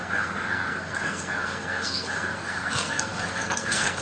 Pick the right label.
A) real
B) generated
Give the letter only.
B